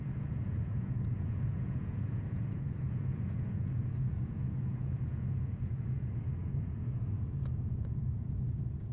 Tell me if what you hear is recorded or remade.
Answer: remade